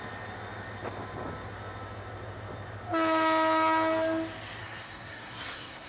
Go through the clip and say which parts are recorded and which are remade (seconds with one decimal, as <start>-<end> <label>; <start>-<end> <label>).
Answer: 0.0-4.6 recorded; 4.6-5.9 remade